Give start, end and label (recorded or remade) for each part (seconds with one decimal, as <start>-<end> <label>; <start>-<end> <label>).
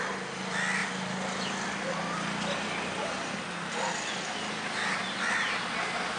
0.0-6.2 recorded